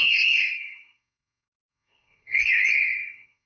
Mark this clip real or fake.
fake